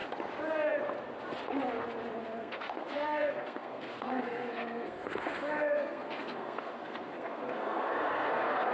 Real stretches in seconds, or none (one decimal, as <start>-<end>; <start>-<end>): 0.0-2.2